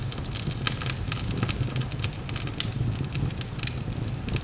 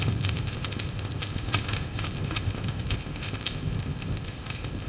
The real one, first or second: first